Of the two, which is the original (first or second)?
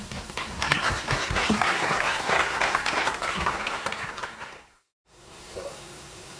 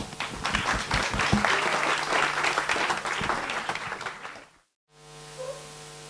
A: second